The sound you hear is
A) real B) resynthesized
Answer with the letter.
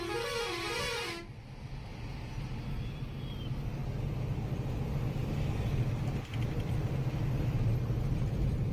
A